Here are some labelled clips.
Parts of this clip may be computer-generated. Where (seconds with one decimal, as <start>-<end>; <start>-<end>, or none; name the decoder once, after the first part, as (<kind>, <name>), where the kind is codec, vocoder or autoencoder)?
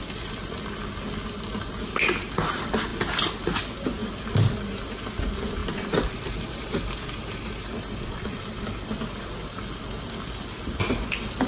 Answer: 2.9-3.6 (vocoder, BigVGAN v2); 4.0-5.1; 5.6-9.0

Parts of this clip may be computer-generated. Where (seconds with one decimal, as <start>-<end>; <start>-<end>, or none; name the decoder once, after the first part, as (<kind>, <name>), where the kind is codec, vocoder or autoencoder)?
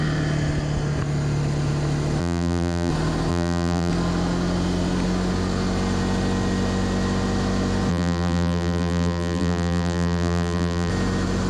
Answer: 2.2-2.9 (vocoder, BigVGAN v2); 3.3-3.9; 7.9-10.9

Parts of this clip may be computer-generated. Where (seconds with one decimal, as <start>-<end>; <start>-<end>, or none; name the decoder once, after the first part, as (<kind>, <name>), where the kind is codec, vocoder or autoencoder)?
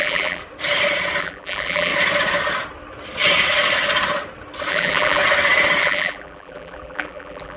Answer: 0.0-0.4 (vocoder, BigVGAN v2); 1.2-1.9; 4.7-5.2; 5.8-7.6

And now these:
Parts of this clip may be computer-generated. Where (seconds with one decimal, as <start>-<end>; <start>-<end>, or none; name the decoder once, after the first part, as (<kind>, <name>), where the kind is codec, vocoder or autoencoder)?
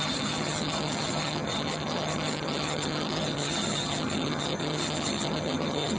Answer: 0.0-6.0 (vocoder, HiFi-GAN)